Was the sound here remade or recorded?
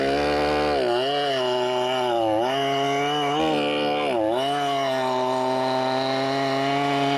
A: recorded